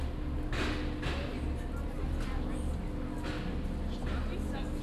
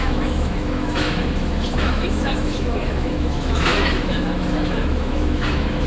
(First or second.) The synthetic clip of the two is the second